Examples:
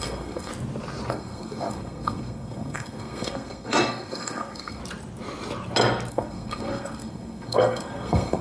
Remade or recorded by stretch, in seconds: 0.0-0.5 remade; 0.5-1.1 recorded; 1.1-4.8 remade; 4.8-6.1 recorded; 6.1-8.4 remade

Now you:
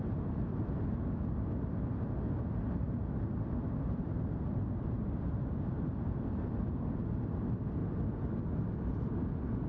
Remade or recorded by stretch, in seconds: 0.0-9.7 recorded